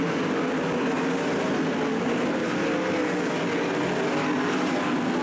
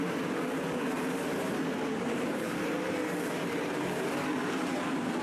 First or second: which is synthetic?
second